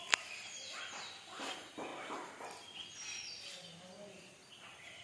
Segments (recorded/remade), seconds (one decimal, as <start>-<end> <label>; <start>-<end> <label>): 0.0-5.0 recorded